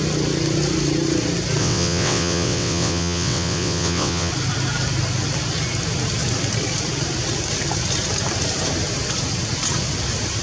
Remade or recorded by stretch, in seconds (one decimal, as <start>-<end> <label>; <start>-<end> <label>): 0.0-1.6 recorded; 1.6-4.3 remade; 4.3-10.4 recorded